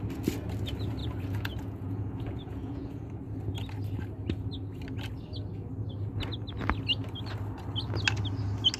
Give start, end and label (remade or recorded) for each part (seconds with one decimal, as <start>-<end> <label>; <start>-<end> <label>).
0.0-1.0 recorded; 1.0-3.1 remade; 3.1-8.8 recorded